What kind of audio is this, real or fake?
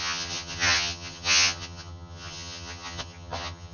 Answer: fake